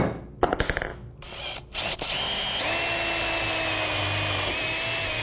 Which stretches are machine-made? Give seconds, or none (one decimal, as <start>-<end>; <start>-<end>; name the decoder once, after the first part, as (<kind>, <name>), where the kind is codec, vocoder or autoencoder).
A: none